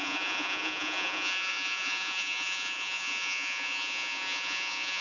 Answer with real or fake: fake